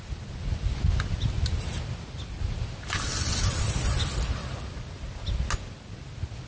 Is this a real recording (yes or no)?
yes